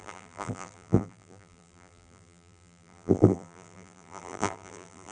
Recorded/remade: remade